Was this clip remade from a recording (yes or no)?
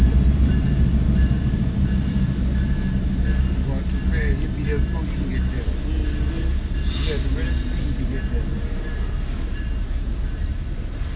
no